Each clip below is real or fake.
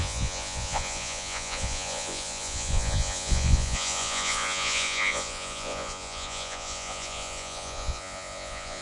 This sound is fake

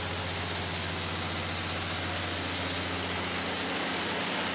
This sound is real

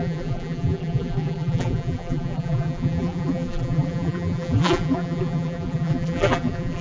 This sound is fake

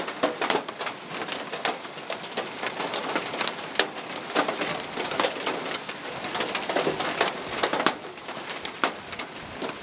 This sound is real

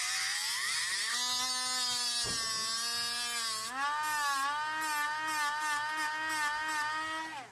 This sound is real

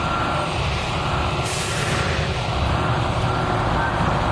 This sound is fake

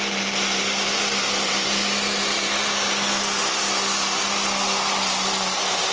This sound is real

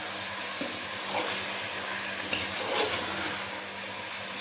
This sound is real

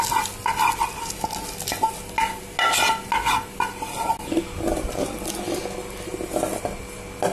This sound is real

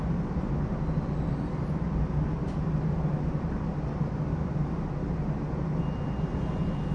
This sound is real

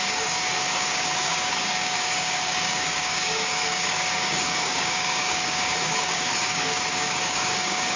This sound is fake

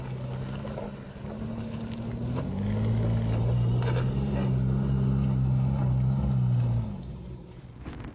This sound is real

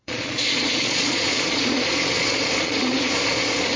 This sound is fake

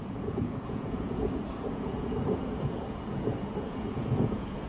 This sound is fake